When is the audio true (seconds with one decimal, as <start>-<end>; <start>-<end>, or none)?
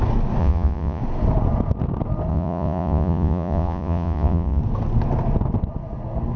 0.0-0.4; 1.0-2.3; 4.6-6.4